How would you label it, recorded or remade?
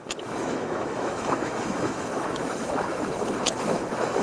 remade